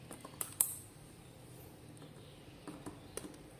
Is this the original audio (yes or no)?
yes